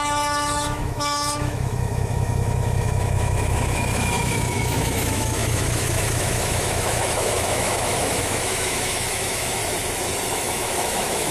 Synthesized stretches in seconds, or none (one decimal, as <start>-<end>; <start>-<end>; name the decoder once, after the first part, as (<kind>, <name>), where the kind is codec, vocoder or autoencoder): 0.0-9.6 (autoencoder, DAC-VAE); 10.3-11.3